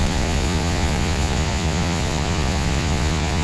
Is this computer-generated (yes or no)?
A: yes